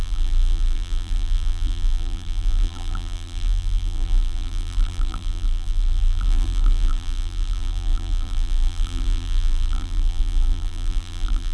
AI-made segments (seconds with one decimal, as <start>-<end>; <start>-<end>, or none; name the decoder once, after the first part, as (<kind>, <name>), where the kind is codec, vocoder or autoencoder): 0.0-11.5 (vocoder, BigVGAN v2)